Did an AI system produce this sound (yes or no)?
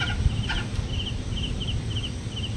no